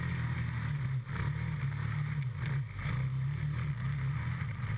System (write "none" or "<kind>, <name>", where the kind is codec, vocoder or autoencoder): none